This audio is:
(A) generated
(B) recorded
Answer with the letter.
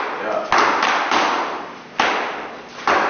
B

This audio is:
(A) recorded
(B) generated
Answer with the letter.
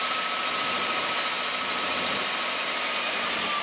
B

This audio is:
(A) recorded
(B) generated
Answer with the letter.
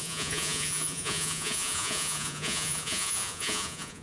B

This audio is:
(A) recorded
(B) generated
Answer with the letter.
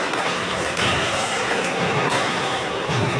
B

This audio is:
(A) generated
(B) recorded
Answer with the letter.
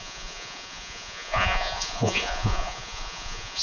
A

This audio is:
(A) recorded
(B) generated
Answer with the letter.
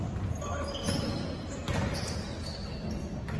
A